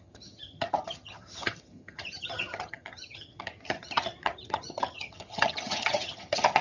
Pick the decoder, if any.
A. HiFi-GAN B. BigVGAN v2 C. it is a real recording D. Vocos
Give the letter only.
A